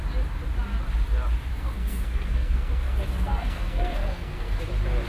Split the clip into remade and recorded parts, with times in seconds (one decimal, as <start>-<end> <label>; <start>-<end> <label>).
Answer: 0.0-1.5 recorded; 1.5-4.6 remade; 4.6-5.1 recorded